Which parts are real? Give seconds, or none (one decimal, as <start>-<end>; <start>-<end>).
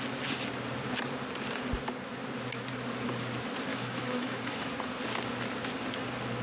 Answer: 0.0-3.7; 4.7-6.4